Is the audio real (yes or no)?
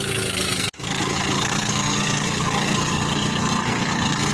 no